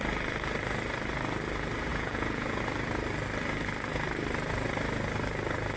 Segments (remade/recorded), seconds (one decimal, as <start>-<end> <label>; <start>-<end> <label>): 0.0-1.9 recorded; 1.9-2.6 remade; 2.6-5.8 recorded